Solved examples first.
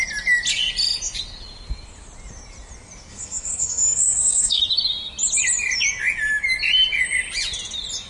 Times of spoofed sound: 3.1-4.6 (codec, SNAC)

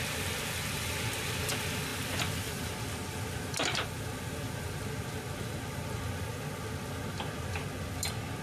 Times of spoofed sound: none

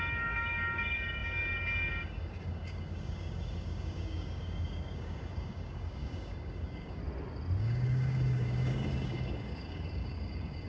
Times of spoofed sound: 0.0-7.0 (codec, DAC); 7.6-10.7

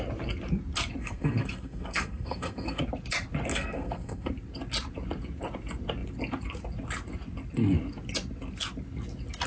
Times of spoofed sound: 1.0-2.8 (codec, SNAC); 3.5-4.3

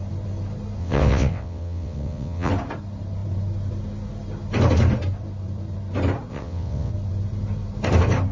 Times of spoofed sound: 0.8-2.5 (vocoder, WaveNeXt); 6.3-6.9

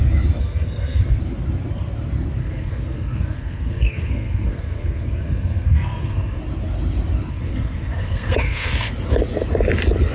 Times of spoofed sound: 0.4-1.2 (codec, SNAC); 2.4-6.4; 7.3-8.9